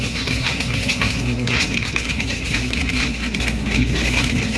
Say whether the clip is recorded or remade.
remade